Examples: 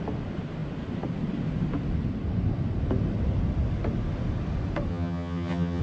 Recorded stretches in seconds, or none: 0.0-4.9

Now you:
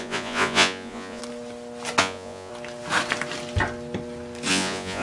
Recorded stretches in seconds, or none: 1.2-2.0; 2.5-4.5